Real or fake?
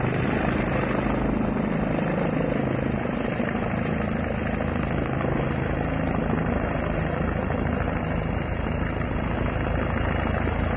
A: real